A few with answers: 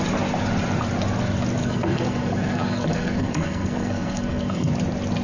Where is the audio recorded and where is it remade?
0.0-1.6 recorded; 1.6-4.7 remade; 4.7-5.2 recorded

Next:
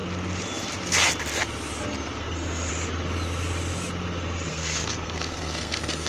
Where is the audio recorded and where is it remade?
0.0-2.2 recorded; 2.2-2.7 remade; 2.7-4.5 recorded; 4.5-6.1 remade

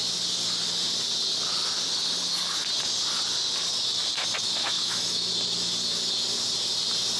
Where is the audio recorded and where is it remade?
0.0-4.6 recorded; 4.6-5.3 remade; 5.3-7.2 recorded

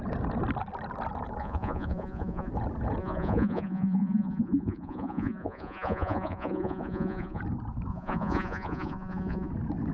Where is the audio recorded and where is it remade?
0.0-1.4 recorded; 1.4-2.5 remade; 2.5-3.0 recorded; 3.0-7.4 remade; 7.4-7.9 recorded; 7.9-9.5 remade; 9.5-9.9 recorded

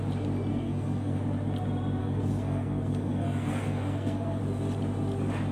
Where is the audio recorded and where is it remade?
0.0-0.5 recorded; 0.5-1.2 remade; 1.2-2.0 recorded; 2.0-4.4 remade; 4.4-5.5 recorded